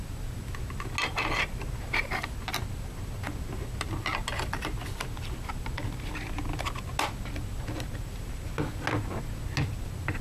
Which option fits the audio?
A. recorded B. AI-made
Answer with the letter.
A